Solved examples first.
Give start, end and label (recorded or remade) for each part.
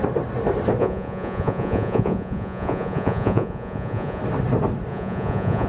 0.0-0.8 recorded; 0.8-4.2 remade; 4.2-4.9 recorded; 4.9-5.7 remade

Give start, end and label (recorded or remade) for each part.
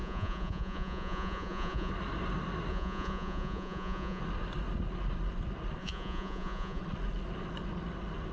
0.0-1.9 remade; 1.9-2.7 recorded; 2.7-4.2 remade; 4.2-5.8 recorded; 5.8-6.8 remade; 6.8-8.3 recorded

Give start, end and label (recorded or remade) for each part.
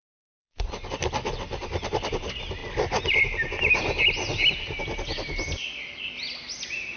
0.0-0.7 remade; 0.7-7.0 recorded